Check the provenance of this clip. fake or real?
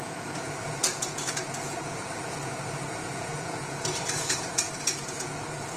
fake